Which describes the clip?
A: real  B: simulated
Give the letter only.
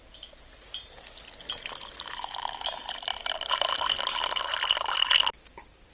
B